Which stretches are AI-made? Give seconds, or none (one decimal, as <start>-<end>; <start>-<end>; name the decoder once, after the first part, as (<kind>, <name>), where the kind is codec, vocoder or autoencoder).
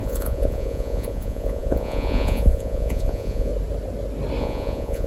0.0-3.5 (vocoder, Vocos); 4.4-5.1